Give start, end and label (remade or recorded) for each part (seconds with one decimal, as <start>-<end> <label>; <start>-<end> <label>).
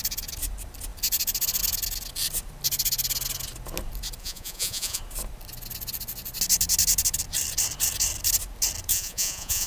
0.0-4.2 recorded; 4.2-5.0 remade; 5.0-8.9 recorded; 8.9-9.7 remade